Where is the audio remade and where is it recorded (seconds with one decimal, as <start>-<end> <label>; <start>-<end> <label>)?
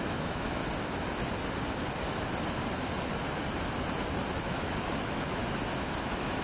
0.0-0.6 remade; 0.6-4.4 recorded; 4.4-5.4 remade; 5.4-6.0 recorded; 6.0-6.4 remade